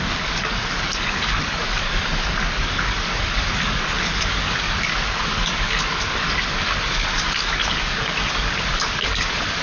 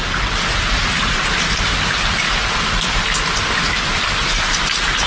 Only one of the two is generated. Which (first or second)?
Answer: first